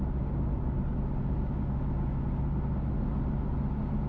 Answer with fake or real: real